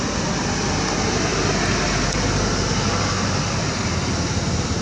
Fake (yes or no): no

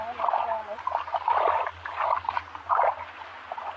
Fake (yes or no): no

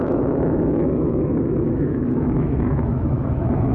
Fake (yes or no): yes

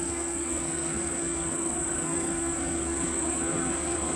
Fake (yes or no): yes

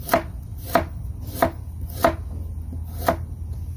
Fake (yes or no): no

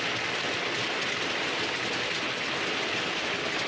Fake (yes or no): no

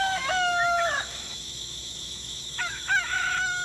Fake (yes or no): yes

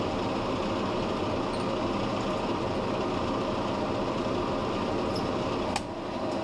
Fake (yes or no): no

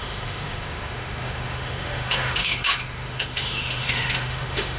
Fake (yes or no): yes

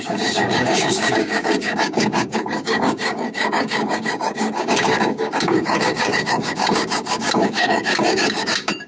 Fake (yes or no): yes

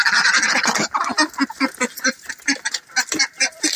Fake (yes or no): no